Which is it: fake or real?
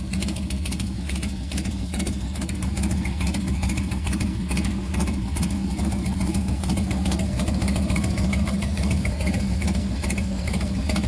fake